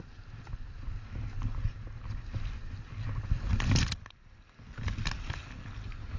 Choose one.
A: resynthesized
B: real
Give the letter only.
B